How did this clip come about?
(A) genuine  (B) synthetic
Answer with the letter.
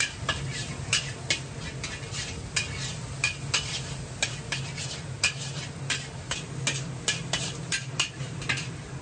A